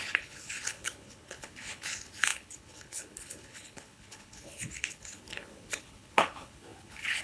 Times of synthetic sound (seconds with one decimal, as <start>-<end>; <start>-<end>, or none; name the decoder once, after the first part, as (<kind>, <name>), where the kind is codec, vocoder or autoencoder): 0.0-7.2 (codec, HILCodec)